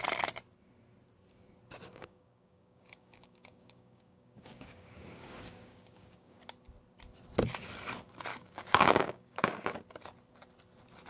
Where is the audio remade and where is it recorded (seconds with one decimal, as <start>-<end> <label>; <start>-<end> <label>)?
0.0-1.9 recorded; 1.9-6.4 remade; 6.4-8.3 recorded; 8.3-9.8 remade; 9.8-11.1 recorded